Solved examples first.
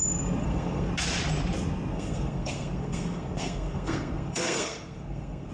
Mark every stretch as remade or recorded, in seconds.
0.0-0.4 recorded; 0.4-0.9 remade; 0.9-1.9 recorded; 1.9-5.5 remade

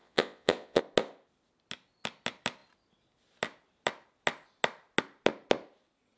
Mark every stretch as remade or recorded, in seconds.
0.0-0.8 remade; 0.8-6.2 recorded

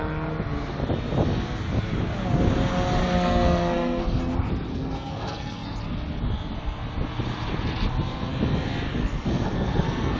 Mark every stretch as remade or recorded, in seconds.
0.0-3.0 recorded; 3.0-4.3 remade; 4.3-4.7 recorded; 4.7-5.8 remade; 5.8-9.0 recorded; 9.0-10.2 remade

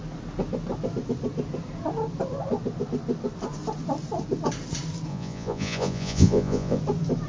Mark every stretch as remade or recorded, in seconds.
0.0-5.1 recorded; 5.1-6.8 remade; 6.8-7.3 recorded

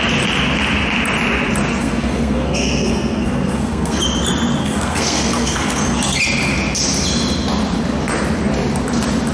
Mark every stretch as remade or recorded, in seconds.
0.0-1.7 recorded; 1.7-4.0 remade; 4.0-4.6 recorded; 4.6-5.8 remade; 5.8-9.3 recorded